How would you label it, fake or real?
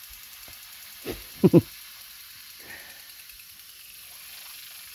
real